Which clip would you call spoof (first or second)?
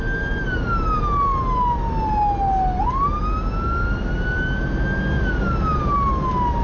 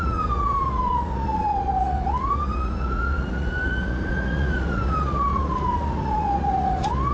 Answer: second